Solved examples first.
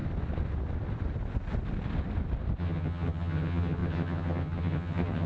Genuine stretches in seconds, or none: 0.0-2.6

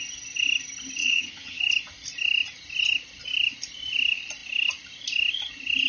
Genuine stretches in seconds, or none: 0.0-1.0; 1.6-5.9

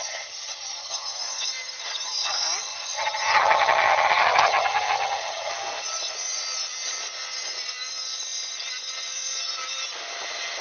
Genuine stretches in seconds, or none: 1.2-2.7; 5.5-10.6

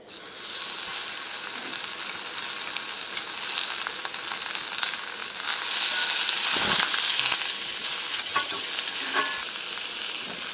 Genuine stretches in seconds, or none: 0.0-8.1; 8.7-10.5

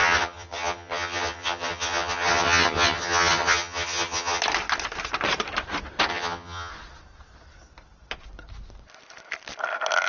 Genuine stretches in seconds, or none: 4.4-6.1; 6.7-10.1

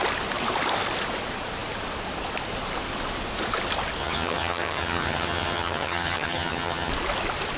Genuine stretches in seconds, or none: 0.0-4.0; 6.9-7.6